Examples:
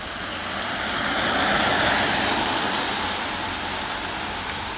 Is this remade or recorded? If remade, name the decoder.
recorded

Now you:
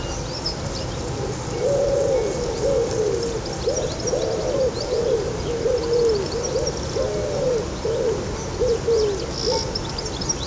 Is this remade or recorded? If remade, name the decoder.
recorded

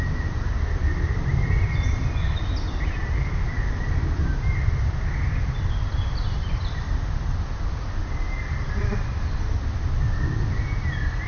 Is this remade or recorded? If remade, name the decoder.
recorded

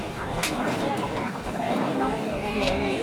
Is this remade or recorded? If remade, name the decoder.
remade, codec, DAC